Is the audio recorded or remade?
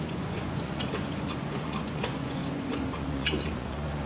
remade